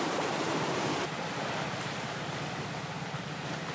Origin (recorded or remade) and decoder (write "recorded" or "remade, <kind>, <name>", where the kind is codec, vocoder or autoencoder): remade, vocoder, BigVGAN v2